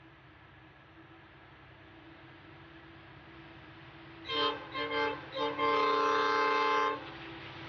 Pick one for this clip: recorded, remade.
recorded